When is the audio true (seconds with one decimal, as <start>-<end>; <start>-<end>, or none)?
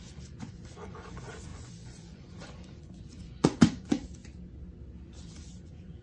4.2-5.2